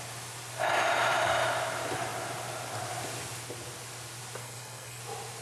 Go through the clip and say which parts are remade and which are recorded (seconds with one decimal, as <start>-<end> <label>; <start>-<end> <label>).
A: 0.0-4.4 recorded; 4.4-5.0 remade; 5.0-5.4 recorded